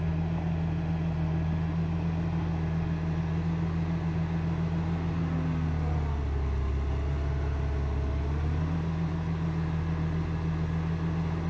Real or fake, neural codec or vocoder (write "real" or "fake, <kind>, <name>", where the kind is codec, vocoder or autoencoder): real